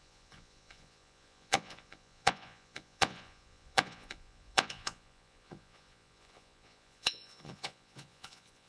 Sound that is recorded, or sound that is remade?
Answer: remade